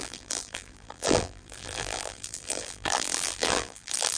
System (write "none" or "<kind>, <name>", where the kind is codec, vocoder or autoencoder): vocoder, BigVGAN v2